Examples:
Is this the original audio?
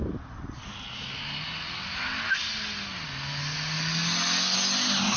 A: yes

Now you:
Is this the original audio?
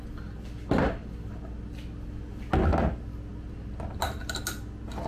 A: yes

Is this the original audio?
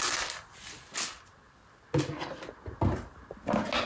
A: yes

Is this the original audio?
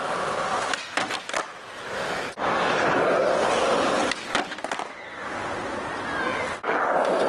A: yes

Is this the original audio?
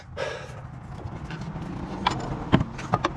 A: yes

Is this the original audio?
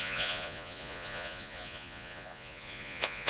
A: no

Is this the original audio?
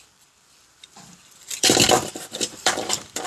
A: no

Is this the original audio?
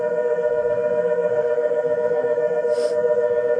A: no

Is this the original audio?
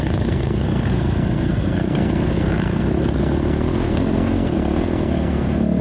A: no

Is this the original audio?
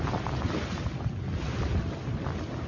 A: yes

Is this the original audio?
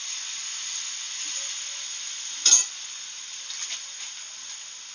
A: yes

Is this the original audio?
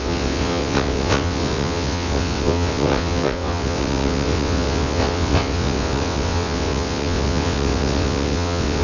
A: no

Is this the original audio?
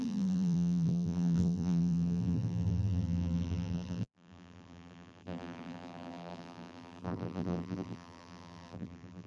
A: no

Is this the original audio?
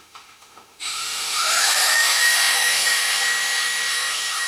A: no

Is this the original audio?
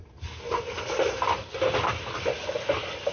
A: yes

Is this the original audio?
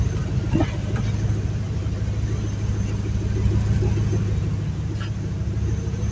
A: yes